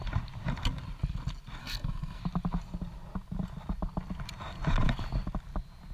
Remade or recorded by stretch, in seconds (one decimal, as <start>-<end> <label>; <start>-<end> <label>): 0.0-1.6 recorded; 1.6-2.2 remade; 2.2-5.9 recorded